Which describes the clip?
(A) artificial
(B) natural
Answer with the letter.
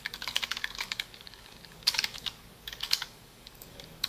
A